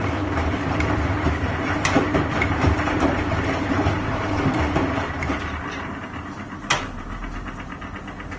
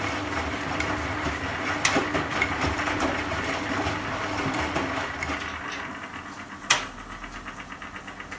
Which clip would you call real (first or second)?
second